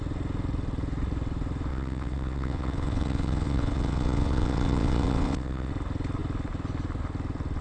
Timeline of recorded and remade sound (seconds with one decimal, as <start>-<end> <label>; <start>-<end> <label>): 0.0-1.7 recorded; 1.7-5.7 remade; 5.7-7.6 recorded